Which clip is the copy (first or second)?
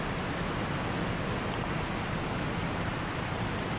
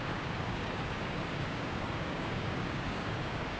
second